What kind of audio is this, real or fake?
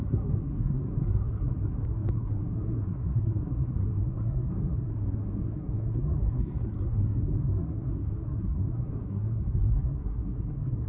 fake